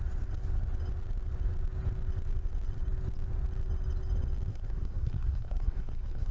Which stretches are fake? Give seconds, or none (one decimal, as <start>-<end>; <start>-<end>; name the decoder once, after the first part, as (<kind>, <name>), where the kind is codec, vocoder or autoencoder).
4.5-6.3 (codec, SNAC)